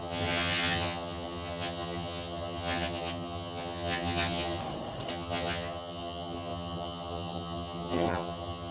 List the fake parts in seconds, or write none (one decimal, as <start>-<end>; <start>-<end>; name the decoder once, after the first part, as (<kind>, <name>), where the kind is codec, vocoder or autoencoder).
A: 0.0-4.6 (vocoder, HiFi-GAN); 5.1-8.7